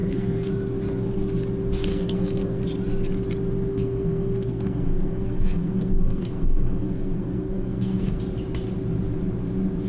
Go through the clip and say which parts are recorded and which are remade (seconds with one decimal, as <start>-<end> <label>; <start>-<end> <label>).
0.0-0.5 remade; 0.5-1.9 recorded; 1.9-2.6 remade; 2.6-3.7 recorded; 3.7-8.2 remade; 8.2-9.9 recorded